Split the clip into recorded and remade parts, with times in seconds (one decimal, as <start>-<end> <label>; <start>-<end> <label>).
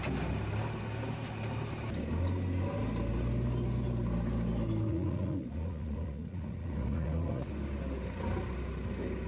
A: 0.0-4.9 recorded; 4.9-7.5 remade; 7.5-9.3 recorded